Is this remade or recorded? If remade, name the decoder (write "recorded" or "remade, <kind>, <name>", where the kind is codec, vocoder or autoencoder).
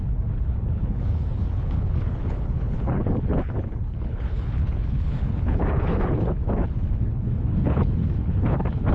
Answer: remade, codec, HILCodec